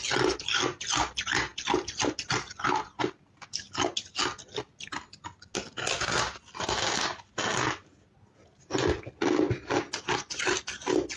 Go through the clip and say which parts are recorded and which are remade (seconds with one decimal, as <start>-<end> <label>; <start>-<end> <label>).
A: 0.0-11.2 recorded